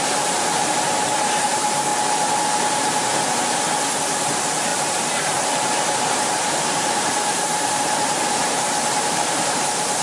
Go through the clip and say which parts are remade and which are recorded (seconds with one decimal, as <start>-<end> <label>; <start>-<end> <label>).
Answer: 0.0-1.9 remade; 1.9-2.7 recorded; 2.7-3.1 remade; 3.1-4.3 recorded; 4.3-10.0 remade

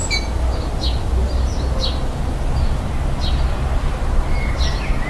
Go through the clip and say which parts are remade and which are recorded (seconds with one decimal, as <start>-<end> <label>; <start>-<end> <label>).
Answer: 0.0-5.1 recorded